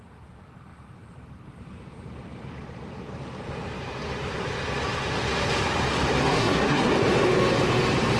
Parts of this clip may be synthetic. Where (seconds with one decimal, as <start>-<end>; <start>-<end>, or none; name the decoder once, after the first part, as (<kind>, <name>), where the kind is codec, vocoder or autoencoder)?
6.2-6.9 (codec, SNAC)